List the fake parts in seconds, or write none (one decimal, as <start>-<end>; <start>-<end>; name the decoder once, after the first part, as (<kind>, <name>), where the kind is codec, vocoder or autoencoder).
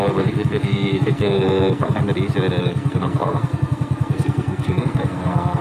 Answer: 0.0-2.0 (codec, SNAC); 2.6-5.6